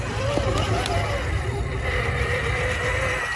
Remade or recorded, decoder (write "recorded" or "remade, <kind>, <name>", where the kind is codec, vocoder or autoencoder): recorded